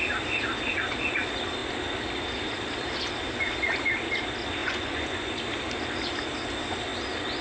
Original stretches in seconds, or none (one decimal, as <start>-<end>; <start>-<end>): 0.0-4.6; 5.3-7.4